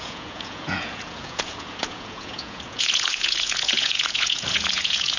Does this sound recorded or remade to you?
remade